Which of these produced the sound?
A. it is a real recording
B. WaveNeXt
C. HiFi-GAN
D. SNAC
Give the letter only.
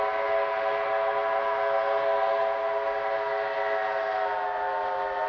A